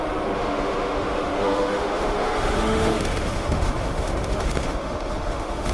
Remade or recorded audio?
remade